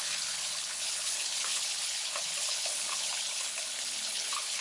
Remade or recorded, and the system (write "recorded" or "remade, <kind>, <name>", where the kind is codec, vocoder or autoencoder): remade, codec, HILCodec